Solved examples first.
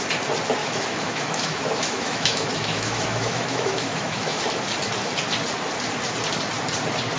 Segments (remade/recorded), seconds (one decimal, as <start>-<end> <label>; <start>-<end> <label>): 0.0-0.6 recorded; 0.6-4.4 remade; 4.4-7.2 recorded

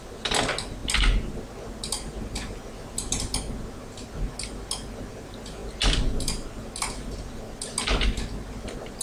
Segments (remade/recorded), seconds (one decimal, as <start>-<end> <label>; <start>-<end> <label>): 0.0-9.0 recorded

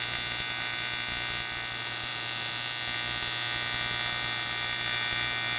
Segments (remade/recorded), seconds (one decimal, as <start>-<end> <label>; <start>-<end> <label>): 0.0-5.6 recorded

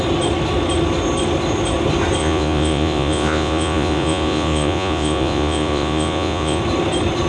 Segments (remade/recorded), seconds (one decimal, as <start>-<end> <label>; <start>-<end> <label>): 0.0-2.2 recorded; 2.2-6.6 remade; 6.6-7.3 recorded

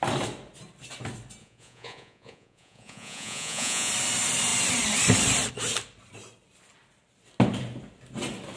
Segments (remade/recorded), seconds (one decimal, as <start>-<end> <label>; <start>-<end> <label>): 0.0-1.4 recorded; 1.4-3.9 remade; 3.9-8.6 recorded